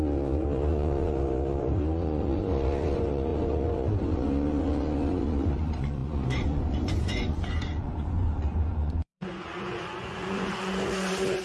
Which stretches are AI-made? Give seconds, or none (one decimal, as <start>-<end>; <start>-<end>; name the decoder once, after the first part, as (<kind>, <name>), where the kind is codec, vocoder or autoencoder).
0.0-11.4 (vocoder, Vocos)